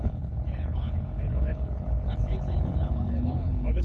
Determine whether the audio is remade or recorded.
remade